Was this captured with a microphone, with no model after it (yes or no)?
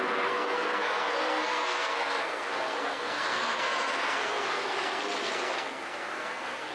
no